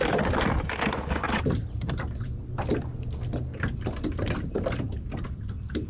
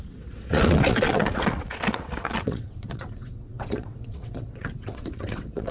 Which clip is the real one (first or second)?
first